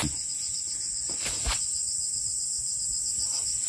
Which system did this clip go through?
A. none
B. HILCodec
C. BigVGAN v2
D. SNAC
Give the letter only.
A